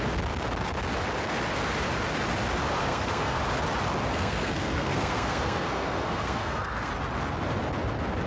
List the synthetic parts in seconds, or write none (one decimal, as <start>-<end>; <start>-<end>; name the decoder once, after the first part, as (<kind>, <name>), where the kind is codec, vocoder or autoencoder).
2.8-3.4 (codec, SNAC); 4.1-6.9